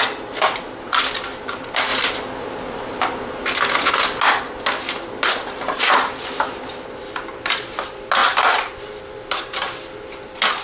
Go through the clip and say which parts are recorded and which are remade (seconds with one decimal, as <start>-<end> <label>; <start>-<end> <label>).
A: 0.0-10.6 recorded